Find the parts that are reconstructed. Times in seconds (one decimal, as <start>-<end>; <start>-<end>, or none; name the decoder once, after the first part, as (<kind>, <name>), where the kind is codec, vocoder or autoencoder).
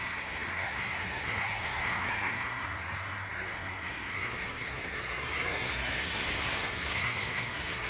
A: 0.0-7.9 (codec, SNAC)